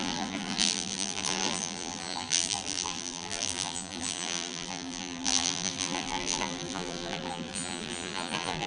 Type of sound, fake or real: fake